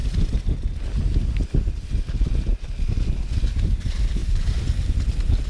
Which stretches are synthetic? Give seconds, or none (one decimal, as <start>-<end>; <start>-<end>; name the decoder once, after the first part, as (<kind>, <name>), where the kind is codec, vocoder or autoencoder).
4.2-4.8 (vocoder, BigVGAN v2)